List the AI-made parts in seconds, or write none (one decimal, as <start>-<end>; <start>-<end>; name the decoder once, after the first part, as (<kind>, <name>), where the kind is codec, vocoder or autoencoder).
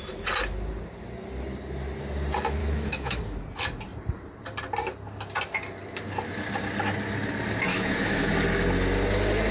2.6-3.2 (autoencoder, DAC-VAE); 7.7-8.2